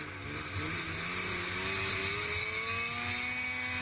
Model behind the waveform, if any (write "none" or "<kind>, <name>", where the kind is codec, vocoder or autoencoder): none